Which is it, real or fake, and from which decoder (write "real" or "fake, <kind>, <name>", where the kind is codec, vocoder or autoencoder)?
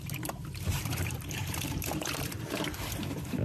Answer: fake, vocoder, BigVGAN v2